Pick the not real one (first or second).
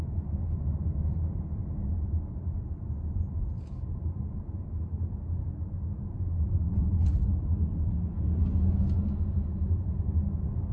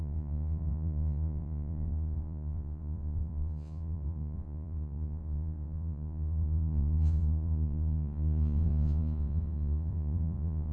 second